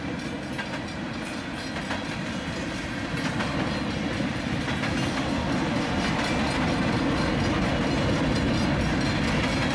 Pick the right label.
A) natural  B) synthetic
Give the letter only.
A